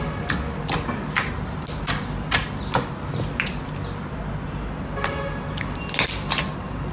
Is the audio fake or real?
real